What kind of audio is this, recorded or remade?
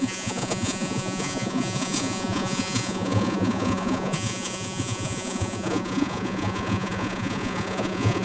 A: remade